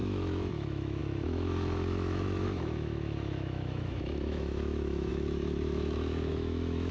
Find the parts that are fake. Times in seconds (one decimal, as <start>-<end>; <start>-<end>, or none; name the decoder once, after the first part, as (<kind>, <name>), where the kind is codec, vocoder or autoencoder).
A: 0.0-6.9 (autoencoder, DAC-VAE)